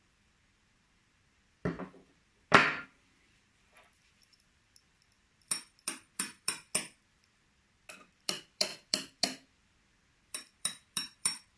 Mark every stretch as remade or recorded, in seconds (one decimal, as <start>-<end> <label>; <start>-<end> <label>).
0.0-6.7 remade; 6.7-8.2 recorded; 8.2-11.6 remade